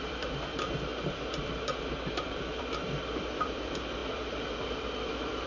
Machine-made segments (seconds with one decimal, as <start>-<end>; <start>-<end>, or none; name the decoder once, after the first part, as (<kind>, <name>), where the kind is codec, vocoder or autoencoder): 0.0-0.9 (vocoder, BigVGAN v2); 2.1-5.5